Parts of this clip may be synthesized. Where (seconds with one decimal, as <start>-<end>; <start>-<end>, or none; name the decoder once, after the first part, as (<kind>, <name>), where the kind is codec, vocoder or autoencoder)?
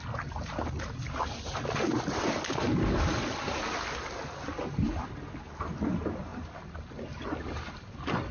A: none